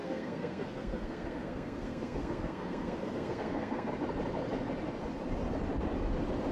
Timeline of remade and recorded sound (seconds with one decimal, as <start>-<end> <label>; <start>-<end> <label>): 0.0-3.9 remade; 3.9-6.5 recorded